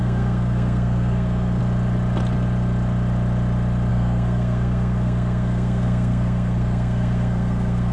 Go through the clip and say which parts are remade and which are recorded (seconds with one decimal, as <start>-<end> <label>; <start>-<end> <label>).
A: 0.0-1.6 remade; 1.6-3.9 recorded; 3.9-7.9 remade